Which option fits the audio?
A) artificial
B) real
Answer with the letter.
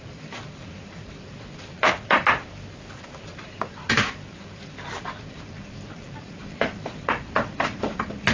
A